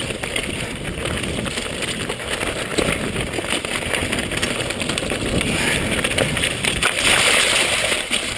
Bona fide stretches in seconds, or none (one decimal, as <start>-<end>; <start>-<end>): 0.0-8.4